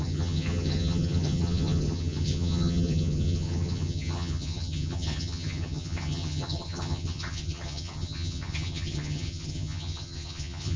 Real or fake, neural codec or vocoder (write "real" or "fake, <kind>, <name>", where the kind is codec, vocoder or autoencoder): fake, vocoder, HiFi-GAN